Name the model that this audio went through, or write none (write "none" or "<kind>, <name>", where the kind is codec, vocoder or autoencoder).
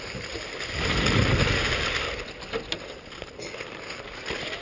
none